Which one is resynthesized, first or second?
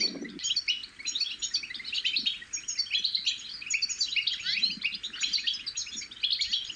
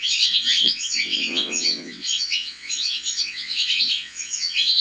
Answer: second